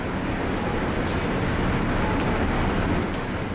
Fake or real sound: real